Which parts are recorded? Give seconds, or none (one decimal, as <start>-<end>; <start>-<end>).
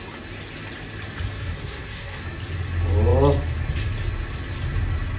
0.0-1.4; 2.2-5.2